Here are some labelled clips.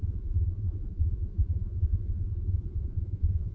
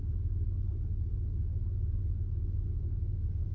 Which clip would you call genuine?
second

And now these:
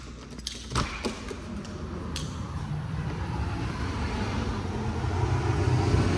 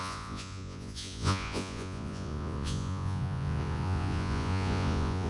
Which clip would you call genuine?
first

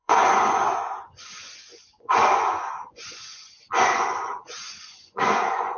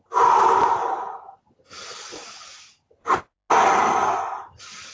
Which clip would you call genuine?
second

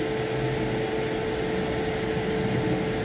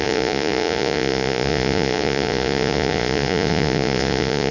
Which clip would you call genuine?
first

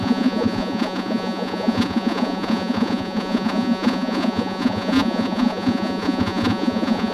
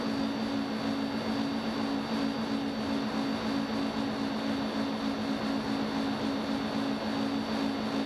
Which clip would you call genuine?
second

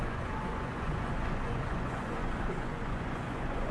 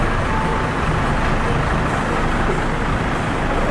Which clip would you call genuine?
second